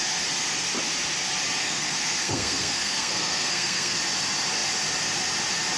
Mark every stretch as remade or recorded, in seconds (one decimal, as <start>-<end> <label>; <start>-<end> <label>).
0.0-1.6 recorded; 1.6-4.0 remade; 4.0-5.8 recorded

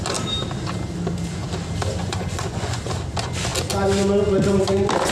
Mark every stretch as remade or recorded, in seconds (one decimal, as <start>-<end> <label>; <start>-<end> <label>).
0.0-2.0 recorded; 2.0-2.8 remade; 2.8-5.1 recorded

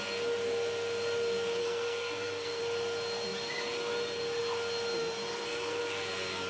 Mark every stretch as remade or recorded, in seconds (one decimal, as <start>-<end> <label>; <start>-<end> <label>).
0.0-1.6 recorded; 1.6-2.6 remade; 2.6-5.3 recorded; 5.3-5.8 remade; 5.8-6.5 recorded

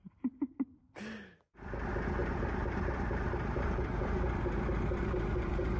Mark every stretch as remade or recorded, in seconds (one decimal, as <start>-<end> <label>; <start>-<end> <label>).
0.0-1.0 remade; 1.0-2.2 recorded; 2.2-5.8 remade

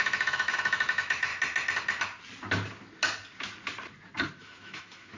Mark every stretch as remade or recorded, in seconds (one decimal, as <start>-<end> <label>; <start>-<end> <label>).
0.0-1.3 remade; 1.3-4.4 recorded; 4.4-5.2 remade

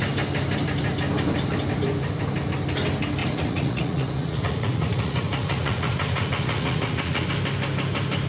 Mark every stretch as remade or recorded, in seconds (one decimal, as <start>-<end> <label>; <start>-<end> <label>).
0.0-3.2 recorded; 3.2-7.3 remade; 7.3-8.3 recorded